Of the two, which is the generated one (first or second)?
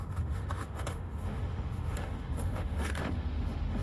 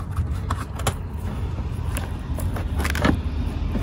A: first